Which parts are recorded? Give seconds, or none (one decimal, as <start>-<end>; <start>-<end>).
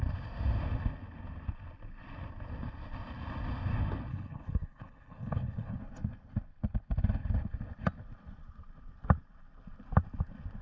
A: 0.0-4.1; 5.8-10.6